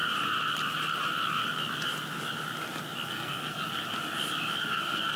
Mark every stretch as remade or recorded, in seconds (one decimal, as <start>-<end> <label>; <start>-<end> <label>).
0.0-3.1 recorded; 3.1-3.6 remade; 3.6-4.6 recorded; 4.6-5.2 remade